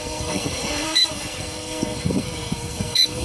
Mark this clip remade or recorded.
remade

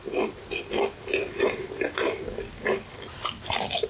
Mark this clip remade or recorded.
recorded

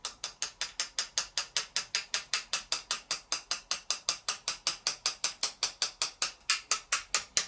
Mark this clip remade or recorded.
recorded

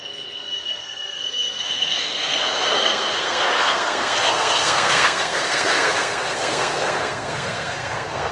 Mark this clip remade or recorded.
remade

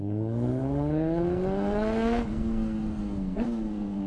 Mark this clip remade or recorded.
remade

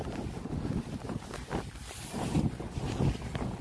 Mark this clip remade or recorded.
recorded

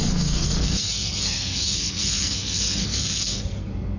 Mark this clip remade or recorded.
remade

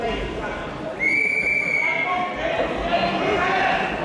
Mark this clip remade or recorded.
recorded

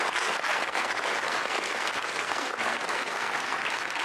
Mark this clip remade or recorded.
remade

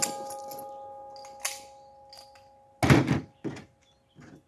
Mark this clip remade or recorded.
recorded